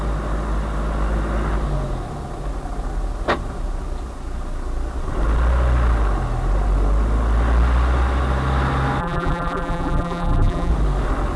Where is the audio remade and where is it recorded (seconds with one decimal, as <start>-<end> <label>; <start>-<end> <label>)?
0.0-9.0 recorded; 9.0-10.7 remade; 10.7-11.4 recorded